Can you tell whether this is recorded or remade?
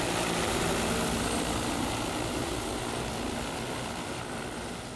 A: recorded